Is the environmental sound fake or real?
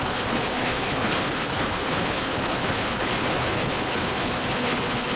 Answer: fake